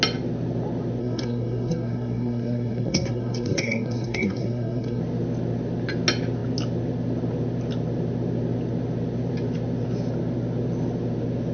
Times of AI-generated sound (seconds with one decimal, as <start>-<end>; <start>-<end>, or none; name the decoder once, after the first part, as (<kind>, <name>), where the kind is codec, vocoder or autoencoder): 1.0-5.0 (codec, SNAC)